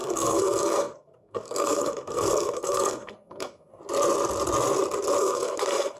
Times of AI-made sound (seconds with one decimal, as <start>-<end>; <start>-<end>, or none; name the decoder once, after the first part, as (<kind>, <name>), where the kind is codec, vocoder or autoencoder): 0.0-3.7 (codec, SNAC); 5.2-6.0

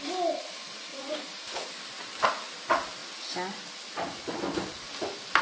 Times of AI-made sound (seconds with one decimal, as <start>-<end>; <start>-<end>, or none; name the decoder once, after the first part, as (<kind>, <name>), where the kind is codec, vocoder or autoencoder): 0.9-1.7 (vocoder, Vocos)

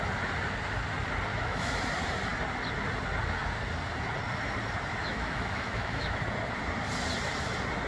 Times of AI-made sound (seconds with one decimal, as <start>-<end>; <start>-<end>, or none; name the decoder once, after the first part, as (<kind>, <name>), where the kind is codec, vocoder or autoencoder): 1.3-1.8 (autoencoder, DAC-VAE); 5.0-6.2

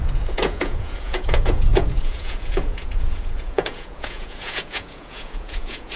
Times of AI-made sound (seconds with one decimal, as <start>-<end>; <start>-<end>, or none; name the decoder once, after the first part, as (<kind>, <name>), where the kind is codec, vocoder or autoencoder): 0.0-6.0 (vocoder, Vocos)